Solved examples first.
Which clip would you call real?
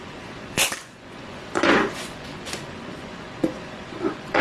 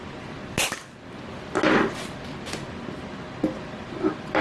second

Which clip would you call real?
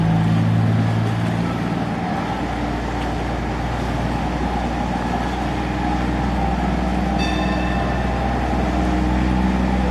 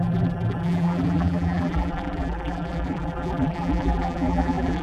first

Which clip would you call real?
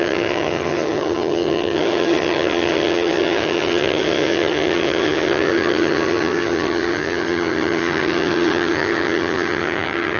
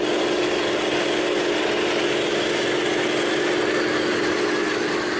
second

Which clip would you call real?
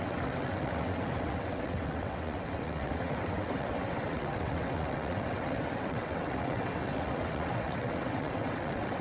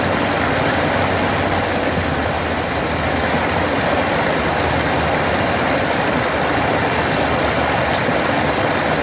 second